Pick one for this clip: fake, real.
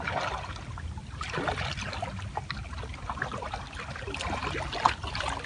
real